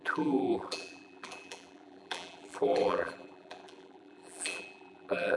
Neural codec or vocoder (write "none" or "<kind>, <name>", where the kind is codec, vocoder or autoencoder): vocoder, BigVGAN v2